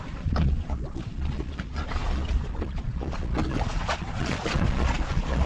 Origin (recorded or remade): remade